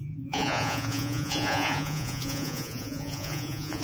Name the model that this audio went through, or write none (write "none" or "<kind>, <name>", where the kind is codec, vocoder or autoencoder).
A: vocoder, Vocos